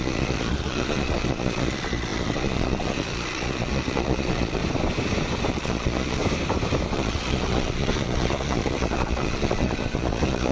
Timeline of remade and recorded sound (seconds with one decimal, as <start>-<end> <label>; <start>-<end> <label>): 0.0-4.6 remade; 4.6-5.5 recorded; 5.5-6.2 remade; 6.2-6.9 recorded; 6.9-10.5 remade